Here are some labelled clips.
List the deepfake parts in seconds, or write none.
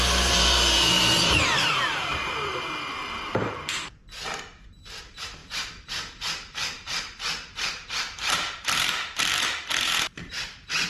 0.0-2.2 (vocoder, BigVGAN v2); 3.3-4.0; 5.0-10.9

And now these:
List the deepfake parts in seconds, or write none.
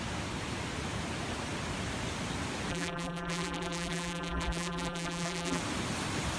2.7-5.6 (vocoder, BigVGAN v2)